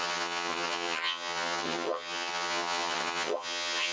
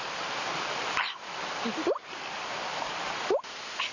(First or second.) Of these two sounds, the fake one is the first